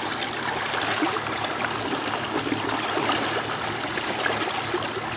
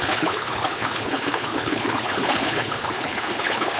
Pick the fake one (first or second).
second